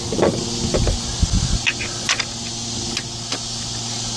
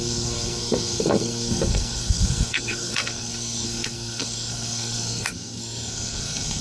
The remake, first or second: second